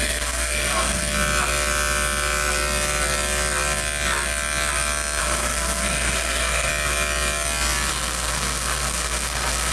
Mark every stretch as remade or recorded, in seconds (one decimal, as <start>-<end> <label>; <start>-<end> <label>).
0.0-1.0 remade; 1.0-5.2 recorded; 5.2-6.7 remade; 6.7-7.9 recorded; 7.9-9.7 remade